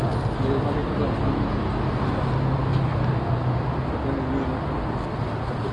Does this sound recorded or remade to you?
recorded